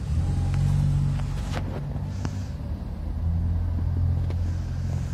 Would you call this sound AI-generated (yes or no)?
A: no